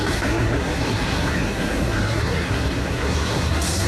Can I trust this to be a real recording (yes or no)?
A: no